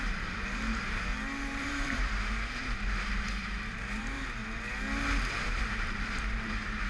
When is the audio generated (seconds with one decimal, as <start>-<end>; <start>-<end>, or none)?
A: 0.0-1.1; 1.6-4.4; 5.3-6.9